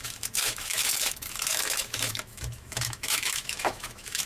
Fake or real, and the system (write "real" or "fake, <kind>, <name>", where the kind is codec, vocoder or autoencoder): fake, autoencoder, DAC-VAE